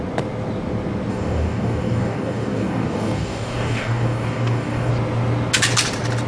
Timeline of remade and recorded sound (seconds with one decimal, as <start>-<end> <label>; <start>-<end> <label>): 0.0-1.1 recorded; 1.1-4.9 remade; 4.9-6.3 recorded